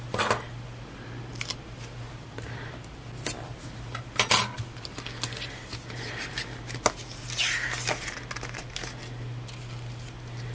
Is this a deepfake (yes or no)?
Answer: no